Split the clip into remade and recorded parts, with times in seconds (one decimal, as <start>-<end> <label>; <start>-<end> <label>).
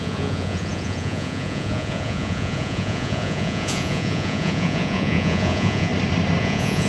0.0-5.9 remade; 5.9-6.4 recorded; 6.4-6.9 remade